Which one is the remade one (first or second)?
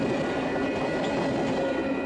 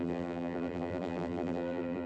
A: second